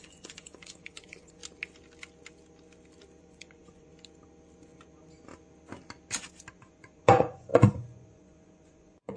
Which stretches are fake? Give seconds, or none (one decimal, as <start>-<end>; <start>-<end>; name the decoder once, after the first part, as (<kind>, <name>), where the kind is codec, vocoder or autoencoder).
0.0-1.4 (vocoder, Vocos); 3.2-3.9; 6.5-9.2